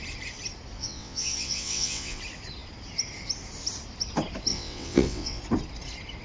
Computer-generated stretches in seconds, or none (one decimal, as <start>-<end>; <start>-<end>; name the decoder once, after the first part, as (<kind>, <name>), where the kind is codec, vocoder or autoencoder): 0.8-2.2 (vocoder, WaveNeXt); 4.5-5.4